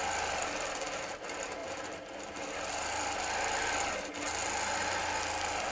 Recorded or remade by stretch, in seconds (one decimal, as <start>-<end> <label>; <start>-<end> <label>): 0.0-1.6 recorded; 1.6-4.1 remade; 4.1-5.7 recorded